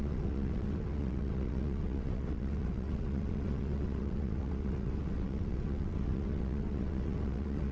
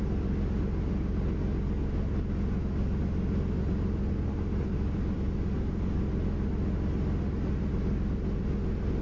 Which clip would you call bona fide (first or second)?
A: second